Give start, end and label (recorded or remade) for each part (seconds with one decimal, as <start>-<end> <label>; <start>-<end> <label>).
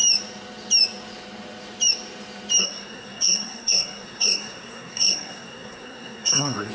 0.0-2.6 recorded; 2.6-6.7 remade